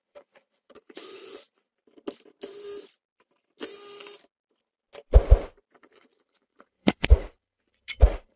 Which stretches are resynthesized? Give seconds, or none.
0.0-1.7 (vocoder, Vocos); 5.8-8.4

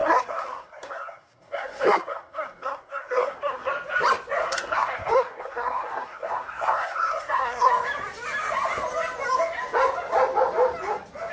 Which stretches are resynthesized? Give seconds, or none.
0.0-3.7 (codec, SNAC); 4.4-7.7